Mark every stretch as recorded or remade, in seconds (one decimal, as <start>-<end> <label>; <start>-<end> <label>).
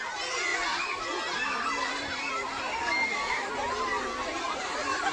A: 0.0-2.8 recorded; 2.8-3.5 remade; 3.5-5.1 recorded